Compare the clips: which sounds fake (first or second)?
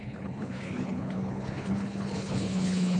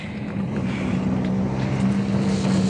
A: first